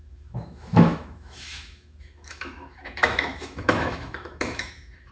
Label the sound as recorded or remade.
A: remade